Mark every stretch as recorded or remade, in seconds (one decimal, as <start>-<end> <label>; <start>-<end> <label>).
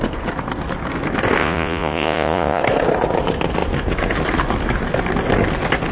0.0-1.4 recorded; 1.4-2.6 remade; 2.6-5.9 recorded